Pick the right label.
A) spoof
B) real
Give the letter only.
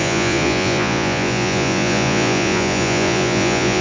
A